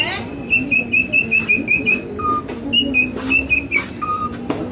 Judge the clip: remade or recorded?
recorded